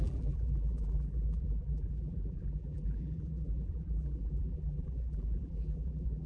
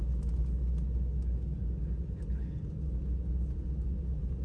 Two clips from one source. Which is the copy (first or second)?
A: first